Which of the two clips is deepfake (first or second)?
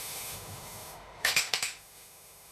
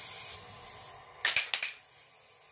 first